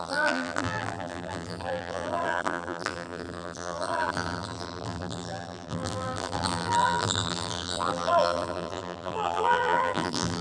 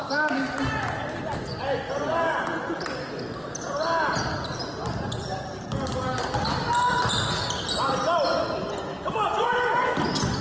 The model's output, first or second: first